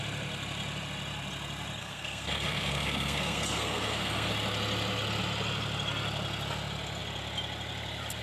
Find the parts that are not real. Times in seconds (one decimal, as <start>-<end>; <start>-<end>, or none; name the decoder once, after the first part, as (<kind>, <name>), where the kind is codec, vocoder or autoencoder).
1.8-4.3 (codec, SNAC)